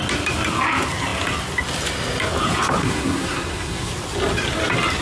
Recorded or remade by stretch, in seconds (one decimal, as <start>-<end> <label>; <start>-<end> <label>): 0.0-2.8 recorded; 2.8-3.9 remade; 3.9-5.0 recorded